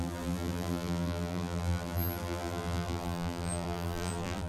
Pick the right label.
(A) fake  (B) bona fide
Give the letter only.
A